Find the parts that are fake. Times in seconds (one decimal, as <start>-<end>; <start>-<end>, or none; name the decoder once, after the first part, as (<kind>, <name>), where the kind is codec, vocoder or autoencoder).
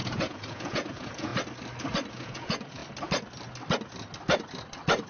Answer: 0.0-1.3 (vocoder, Vocos); 2.1-2.8